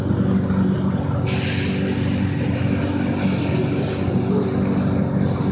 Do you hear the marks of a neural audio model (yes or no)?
no